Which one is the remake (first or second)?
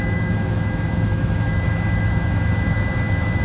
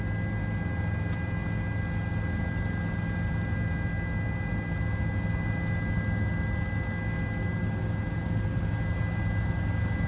first